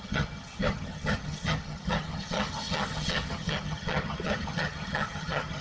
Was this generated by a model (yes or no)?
yes